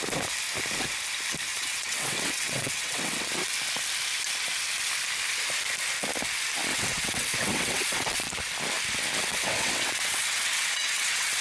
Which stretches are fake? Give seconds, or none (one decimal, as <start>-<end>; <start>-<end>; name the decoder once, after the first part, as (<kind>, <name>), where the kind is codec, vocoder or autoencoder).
1.5-3.3 (vocoder, WaveNeXt); 6.7-8.3; 9.3-11.4